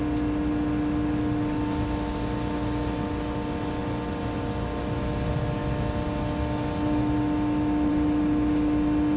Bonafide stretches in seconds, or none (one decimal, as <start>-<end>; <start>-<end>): 0.0-9.2